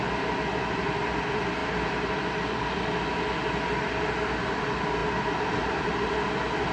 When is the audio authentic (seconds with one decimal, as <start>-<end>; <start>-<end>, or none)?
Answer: 0.0-6.7